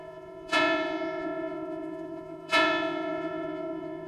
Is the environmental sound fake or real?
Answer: fake